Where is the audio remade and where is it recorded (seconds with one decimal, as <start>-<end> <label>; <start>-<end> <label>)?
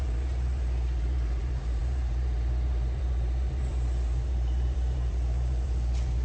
0.0-6.2 remade